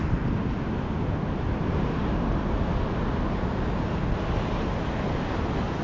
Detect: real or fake real